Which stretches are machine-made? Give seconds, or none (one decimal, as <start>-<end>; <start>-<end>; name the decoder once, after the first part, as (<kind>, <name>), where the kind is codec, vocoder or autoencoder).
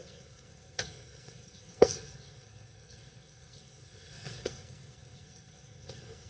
0.0-6.3 (codec, SNAC)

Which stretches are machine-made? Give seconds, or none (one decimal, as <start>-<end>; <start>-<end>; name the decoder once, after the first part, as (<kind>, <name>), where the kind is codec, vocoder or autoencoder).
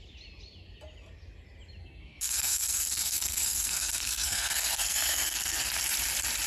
1.8-5.7 (codec, SNAC)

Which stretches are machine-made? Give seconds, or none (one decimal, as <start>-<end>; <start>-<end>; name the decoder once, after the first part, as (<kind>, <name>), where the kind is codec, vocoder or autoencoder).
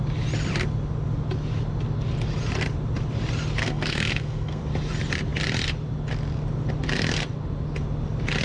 3.6-4.6 (codec, SNAC)